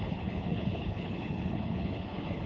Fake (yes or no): yes